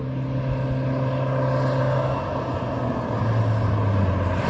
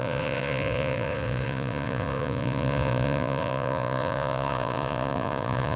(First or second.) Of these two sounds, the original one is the first